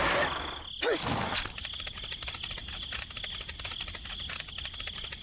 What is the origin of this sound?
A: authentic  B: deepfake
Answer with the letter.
A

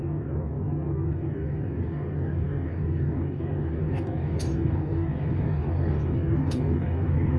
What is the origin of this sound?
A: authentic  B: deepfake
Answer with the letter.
B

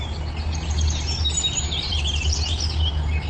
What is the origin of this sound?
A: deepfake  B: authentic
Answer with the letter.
B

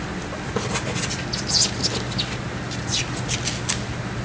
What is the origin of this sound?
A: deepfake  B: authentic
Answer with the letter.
B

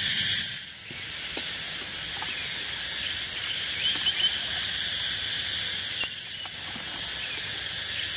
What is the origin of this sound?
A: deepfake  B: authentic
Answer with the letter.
B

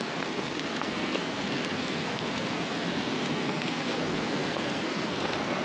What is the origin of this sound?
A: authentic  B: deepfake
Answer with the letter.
B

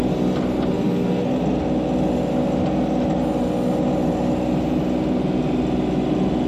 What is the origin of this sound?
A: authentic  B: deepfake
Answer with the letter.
A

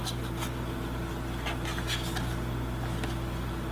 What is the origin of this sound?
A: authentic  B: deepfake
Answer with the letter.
A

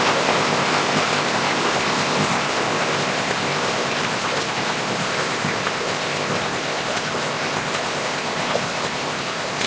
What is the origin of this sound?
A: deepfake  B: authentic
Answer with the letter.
A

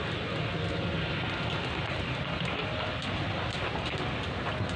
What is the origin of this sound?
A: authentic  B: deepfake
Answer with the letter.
A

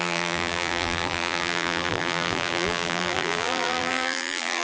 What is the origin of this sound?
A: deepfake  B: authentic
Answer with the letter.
A